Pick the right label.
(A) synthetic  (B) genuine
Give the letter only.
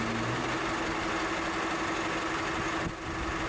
B